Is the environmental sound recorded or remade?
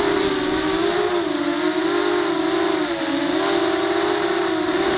recorded